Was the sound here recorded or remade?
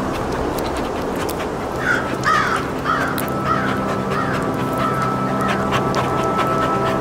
recorded